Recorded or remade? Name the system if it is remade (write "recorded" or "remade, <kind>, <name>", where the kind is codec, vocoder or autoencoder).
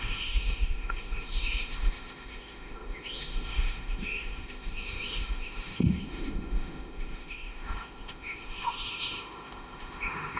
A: remade, autoencoder, DAC-VAE